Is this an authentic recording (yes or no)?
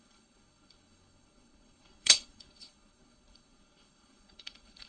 no